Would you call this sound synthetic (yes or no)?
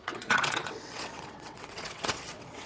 yes